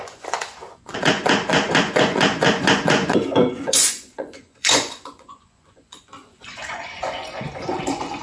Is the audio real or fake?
fake